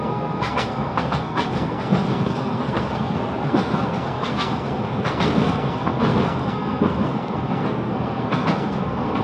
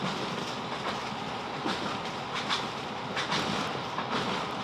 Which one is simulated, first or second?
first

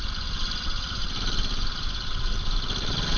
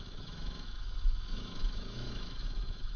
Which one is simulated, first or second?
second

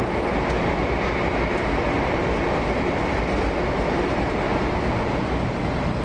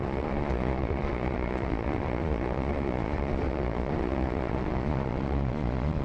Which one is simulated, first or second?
second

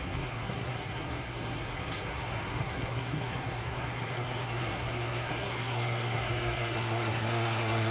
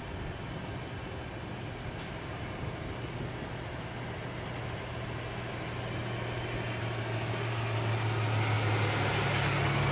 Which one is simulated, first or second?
first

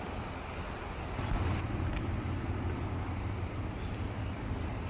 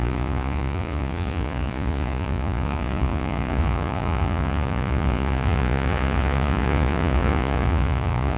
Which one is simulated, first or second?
second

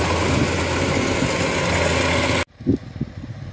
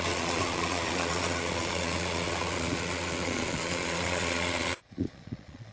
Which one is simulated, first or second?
second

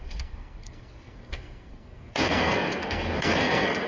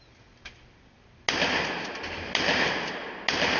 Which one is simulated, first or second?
first